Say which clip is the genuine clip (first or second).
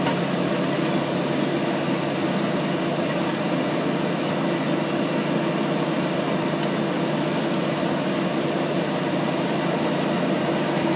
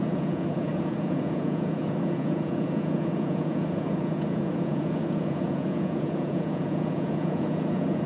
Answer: first